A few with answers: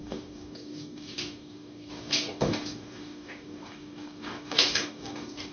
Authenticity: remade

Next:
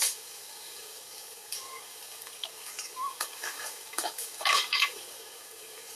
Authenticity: remade